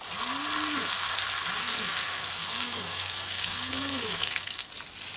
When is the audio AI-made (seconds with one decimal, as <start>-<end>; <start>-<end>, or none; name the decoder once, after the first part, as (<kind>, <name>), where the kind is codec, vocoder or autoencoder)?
0.7-1.2 (codec, SNAC); 1.6-4.7